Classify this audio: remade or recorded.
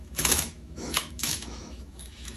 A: remade